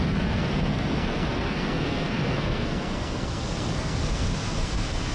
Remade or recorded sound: remade